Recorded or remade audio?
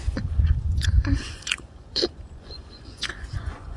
remade